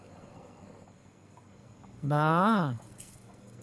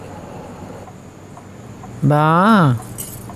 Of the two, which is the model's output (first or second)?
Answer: first